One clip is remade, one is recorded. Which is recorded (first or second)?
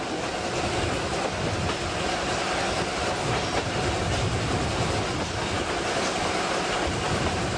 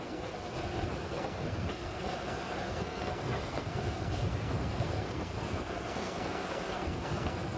first